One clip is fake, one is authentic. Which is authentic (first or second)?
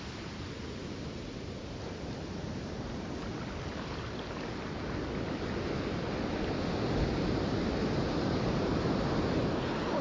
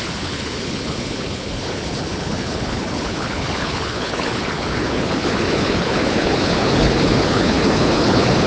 first